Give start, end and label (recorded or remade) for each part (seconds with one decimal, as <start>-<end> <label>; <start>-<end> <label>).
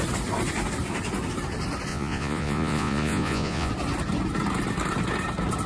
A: 0.0-1.9 recorded; 1.9-3.7 remade; 3.7-5.7 recorded